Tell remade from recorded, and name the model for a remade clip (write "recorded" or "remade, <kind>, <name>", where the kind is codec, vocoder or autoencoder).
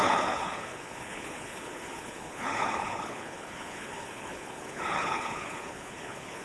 remade, codec, HILCodec